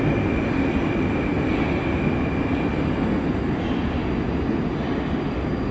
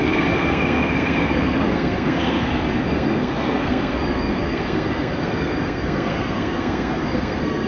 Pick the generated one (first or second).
second